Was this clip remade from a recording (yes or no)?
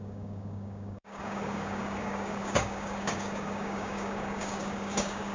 yes